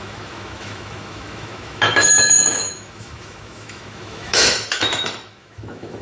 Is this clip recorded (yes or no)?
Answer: no